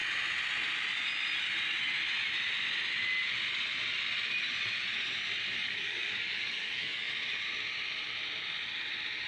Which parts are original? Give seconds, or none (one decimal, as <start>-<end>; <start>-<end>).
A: 0.0-5.5; 7.1-9.3